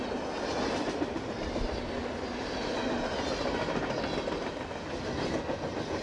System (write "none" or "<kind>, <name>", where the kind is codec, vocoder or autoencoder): none